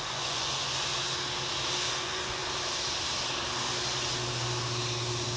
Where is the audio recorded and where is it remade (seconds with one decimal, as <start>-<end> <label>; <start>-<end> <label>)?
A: 0.0-0.9 remade; 0.9-1.9 recorded; 1.9-2.4 remade; 2.4-5.4 recorded